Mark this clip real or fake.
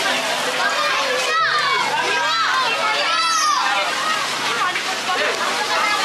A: real